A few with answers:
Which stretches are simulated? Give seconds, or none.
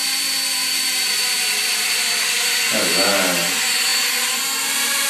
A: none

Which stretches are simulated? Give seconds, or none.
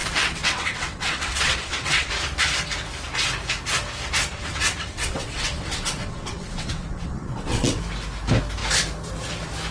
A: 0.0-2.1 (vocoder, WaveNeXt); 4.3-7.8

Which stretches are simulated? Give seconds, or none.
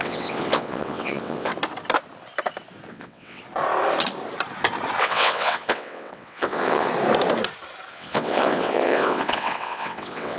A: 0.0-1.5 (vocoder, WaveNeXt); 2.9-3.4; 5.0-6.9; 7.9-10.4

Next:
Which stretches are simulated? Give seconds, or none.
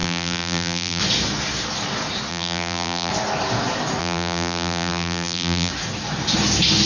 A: 0.0-1.0 (vocoder, BigVGAN v2); 2.3-3.1; 4.0-5.7